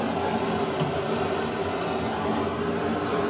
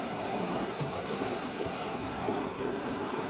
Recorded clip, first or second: first